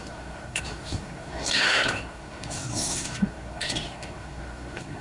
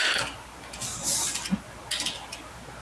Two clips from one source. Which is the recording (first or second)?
second